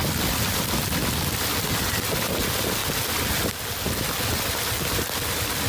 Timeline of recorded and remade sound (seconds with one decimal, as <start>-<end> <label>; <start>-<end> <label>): 0.0-5.7 recorded